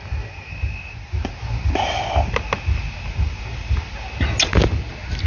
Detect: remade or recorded recorded